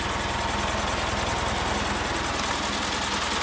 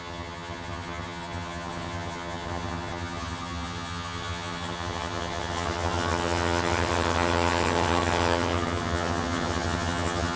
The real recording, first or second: first